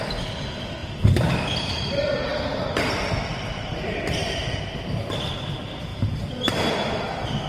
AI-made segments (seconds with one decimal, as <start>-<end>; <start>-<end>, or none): 0.8-5.3; 5.9-6.7